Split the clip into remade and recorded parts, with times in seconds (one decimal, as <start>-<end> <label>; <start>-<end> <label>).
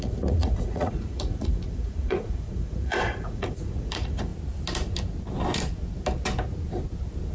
0.0-4.3 remade; 4.3-7.3 recorded